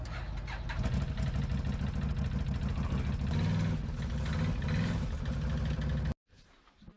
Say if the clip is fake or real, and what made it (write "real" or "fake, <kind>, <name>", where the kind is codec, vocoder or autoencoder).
real